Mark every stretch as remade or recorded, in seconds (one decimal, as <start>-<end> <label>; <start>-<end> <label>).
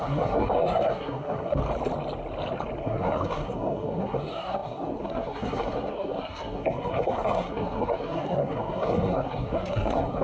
0.0-1.6 remade; 1.6-2.8 recorded; 2.8-10.2 remade